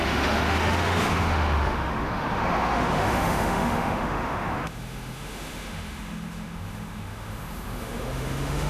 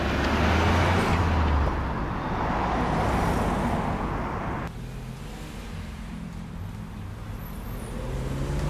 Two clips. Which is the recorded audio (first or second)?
second